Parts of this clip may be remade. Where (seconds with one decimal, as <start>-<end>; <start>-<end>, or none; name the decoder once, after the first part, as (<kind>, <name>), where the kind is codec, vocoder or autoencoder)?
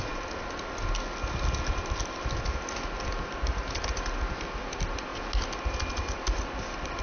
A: none